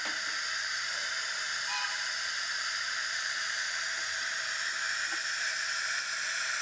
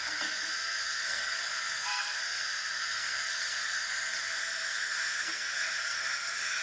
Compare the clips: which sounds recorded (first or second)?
first